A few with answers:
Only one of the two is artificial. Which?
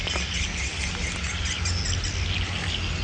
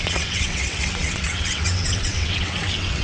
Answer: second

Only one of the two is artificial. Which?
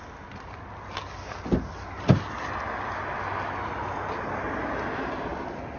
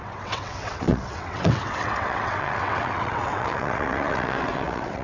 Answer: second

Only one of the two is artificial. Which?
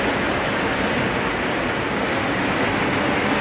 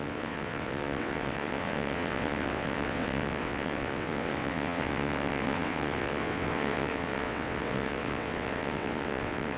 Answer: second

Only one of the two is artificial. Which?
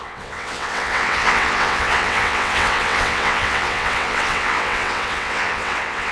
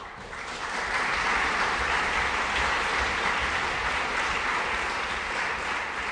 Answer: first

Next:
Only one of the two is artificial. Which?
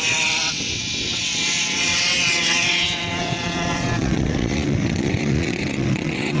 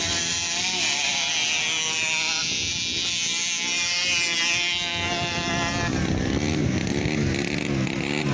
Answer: first